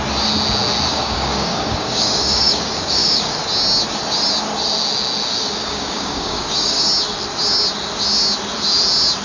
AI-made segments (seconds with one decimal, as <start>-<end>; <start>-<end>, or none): 0.9-3.4; 5.6-6.8